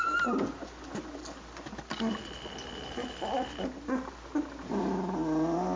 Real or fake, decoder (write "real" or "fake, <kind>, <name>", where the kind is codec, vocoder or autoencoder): real